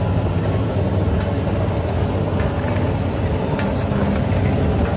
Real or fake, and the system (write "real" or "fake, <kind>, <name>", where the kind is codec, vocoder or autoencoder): real